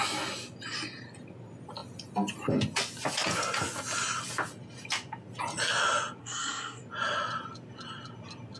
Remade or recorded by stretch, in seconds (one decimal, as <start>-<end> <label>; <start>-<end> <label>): 0.0-6.2 recorded; 6.2-6.8 remade; 6.8-8.6 recorded